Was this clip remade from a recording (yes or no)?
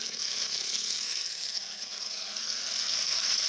yes